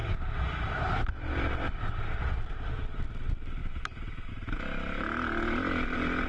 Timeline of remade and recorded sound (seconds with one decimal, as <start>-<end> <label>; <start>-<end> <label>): 0.0-6.3 remade